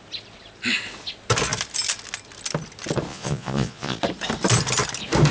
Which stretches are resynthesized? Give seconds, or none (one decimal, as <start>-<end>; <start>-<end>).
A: 3.1-4.0